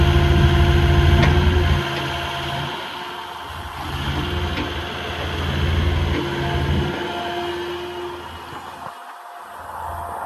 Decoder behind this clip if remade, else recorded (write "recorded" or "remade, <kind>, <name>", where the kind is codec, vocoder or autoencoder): recorded